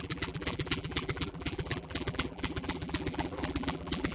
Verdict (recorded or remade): remade